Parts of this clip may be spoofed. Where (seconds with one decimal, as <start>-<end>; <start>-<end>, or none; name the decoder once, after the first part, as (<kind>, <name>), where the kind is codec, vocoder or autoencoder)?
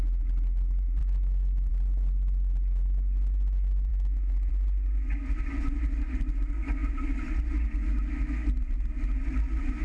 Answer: 1.0-1.7 (autoencoder, DAC-VAE); 3.9-4.5